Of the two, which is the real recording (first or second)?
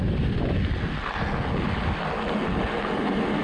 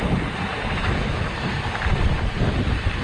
first